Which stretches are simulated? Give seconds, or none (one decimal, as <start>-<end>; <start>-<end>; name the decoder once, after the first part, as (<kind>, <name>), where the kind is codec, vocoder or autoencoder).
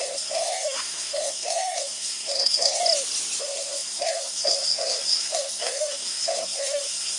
0.0-2.8 (codec, SNAC); 3.4-7.2